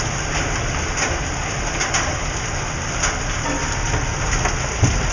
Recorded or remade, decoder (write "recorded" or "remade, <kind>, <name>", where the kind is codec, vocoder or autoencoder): recorded